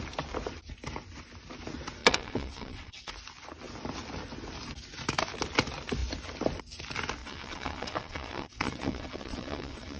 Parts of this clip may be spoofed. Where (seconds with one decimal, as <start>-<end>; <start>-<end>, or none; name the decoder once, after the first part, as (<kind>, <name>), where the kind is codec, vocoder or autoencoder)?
2.0-3.1 (vocoder, WaveNeXt); 7.2-10.0